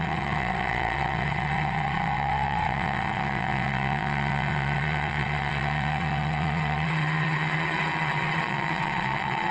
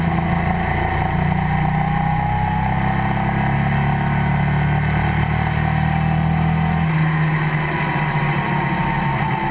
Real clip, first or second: second